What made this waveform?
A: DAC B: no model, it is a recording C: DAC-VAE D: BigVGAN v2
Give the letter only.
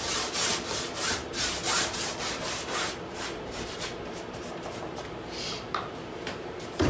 D